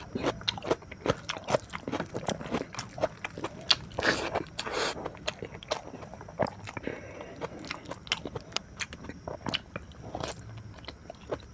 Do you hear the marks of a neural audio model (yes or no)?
no